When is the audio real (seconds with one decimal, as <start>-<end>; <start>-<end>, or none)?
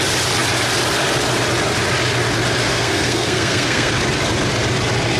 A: 0.0-2.6; 3.9-5.2